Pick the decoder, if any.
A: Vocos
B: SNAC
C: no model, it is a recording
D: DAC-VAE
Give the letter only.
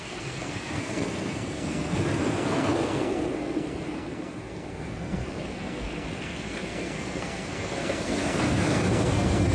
B